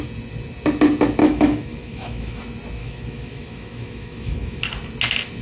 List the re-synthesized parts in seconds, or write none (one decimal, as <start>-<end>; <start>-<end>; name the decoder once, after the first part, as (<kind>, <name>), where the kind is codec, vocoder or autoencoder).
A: 1.2-2.4 (autoencoder, DAC-VAE); 2.8-4.6